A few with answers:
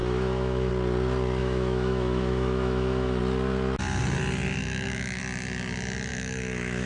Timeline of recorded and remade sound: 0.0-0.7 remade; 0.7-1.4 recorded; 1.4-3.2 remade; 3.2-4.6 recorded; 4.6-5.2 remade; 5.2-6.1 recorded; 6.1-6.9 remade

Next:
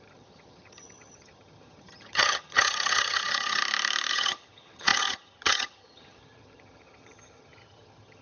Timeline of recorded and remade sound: 0.0-3.6 remade; 3.6-4.1 recorded; 4.1-8.2 remade

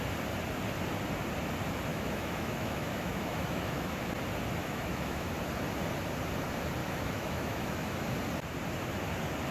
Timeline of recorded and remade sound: 0.0-1.9 recorded; 1.9-4.1 remade; 4.1-4.6 recorded; 4.6-5.3 remade; 5.3-6.8 recorded; 6.8-8.1 remade; 8.1-9.5 recorded

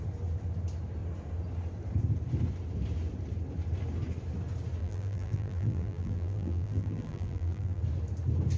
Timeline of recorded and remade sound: 0.0-4.8 recorded; 4.8-7.8 remade; 7.8-8.6 recorded

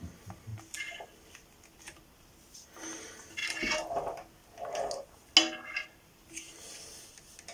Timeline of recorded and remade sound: 0.0-7.5 recorded

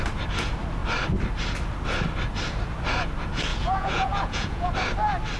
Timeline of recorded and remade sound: 0.0-3.5 recorded; 3.5-4.7 remade; 4.7-5.4 recorded

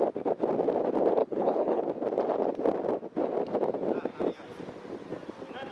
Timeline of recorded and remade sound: 0.0-1.2 recorded; 1.2-1.8 remade; 1.8-5.7 recorded